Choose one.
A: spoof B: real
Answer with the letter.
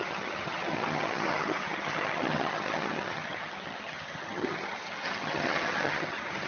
A